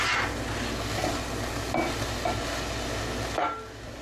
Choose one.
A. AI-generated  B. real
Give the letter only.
B